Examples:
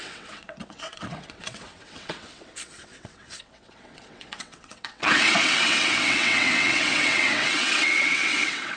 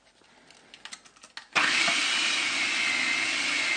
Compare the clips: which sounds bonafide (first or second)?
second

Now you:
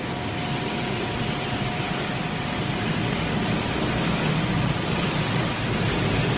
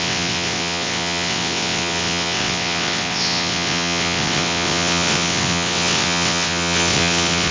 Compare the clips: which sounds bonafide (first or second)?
first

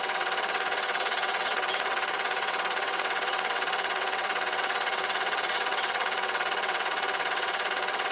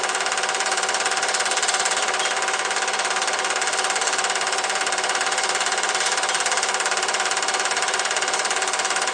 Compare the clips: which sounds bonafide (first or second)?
second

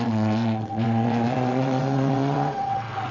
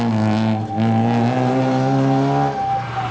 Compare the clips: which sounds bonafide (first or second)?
second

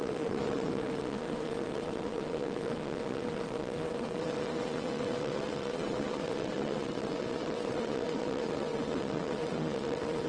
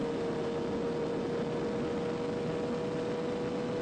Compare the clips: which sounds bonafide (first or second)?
second